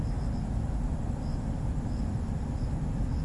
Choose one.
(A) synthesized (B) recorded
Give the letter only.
B